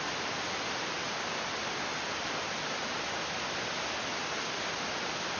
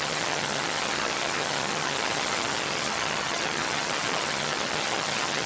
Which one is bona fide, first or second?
first